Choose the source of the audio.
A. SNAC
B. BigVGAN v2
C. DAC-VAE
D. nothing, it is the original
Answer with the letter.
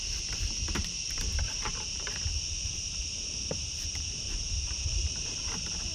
B